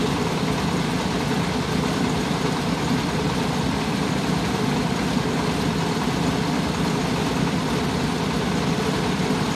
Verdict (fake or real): real